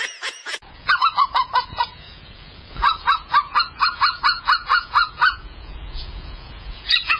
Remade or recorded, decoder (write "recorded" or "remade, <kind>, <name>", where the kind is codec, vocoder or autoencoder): remade, vocoder, Vocos